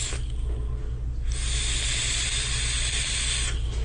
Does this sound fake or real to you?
real